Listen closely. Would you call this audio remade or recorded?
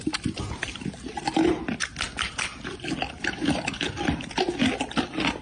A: recorded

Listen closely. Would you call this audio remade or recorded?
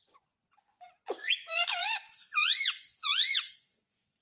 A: remade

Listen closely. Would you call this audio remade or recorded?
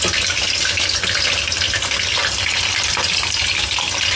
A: recorded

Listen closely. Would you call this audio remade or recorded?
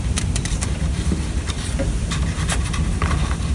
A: remade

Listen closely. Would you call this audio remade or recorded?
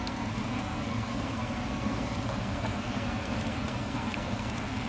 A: remade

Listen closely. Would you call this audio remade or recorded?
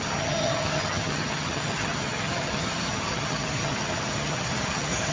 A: remade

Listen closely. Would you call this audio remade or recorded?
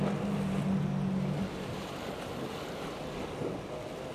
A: recorded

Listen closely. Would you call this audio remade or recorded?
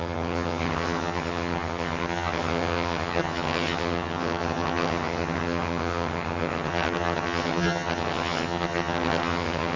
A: remade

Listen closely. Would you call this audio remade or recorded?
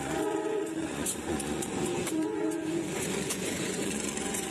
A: remade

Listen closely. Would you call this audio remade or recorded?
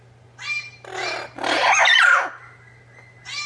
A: recorded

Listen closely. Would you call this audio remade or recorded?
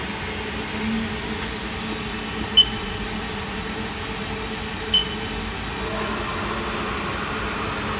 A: recorded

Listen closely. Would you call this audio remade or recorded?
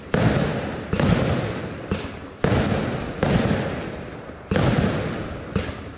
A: recorded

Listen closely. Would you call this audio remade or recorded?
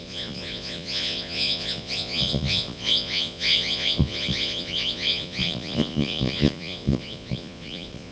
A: remade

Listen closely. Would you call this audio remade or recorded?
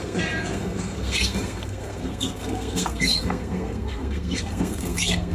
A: remade